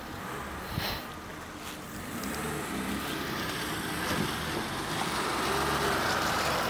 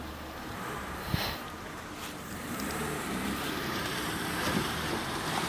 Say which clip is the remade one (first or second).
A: second